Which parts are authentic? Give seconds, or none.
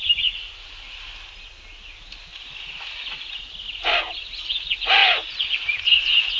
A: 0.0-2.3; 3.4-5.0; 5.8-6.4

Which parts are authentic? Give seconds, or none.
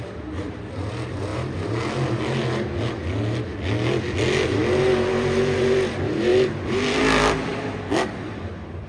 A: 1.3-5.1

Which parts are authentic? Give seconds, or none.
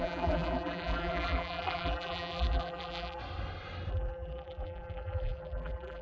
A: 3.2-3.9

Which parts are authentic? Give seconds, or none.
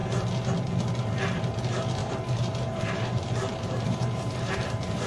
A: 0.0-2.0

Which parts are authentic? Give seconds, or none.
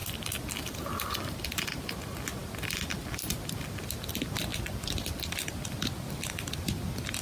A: 1.1-4.5; 5.1-7.2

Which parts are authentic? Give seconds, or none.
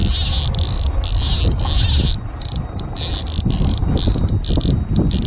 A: 0.0-5.3